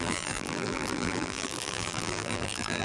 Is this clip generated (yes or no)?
yes